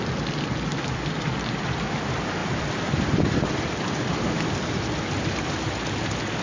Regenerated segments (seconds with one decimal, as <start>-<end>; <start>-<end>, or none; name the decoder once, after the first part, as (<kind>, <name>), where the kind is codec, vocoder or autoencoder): 2.4-4.9 (vocoder, BigVGAN v2)